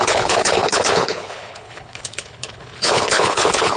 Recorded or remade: remade